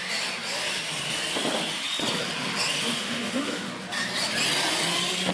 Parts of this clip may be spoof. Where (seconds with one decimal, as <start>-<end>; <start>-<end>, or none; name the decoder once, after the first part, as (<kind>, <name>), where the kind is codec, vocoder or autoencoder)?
2.9-3.7 (autoencoder, DAC-VAE)